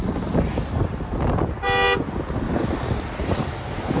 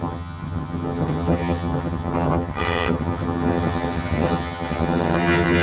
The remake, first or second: second